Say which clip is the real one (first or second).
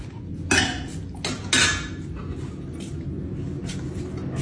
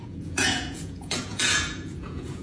first